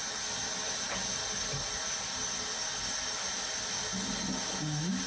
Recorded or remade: recorded